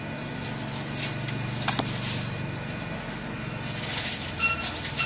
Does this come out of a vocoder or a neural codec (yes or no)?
no